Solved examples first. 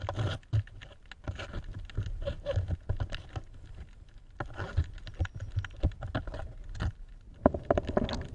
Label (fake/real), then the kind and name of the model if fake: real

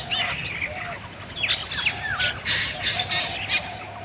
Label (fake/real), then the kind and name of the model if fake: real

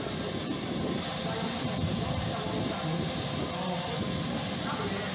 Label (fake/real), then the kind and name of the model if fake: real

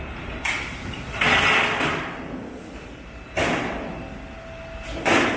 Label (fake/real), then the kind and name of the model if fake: real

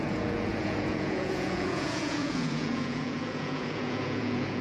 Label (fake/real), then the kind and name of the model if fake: fake, vocoder, Vocos